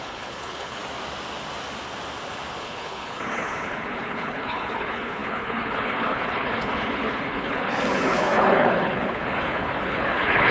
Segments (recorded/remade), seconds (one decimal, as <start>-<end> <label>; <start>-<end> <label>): 0.0-0.8 remade; 0.8-2.6 recorded; 2.6-10.5 remade